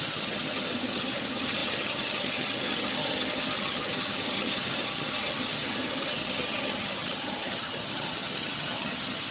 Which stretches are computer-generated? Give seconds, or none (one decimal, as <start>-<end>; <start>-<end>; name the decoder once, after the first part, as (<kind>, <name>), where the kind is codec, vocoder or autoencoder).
0.0-9.3 (vocoder, HiFi-GAN)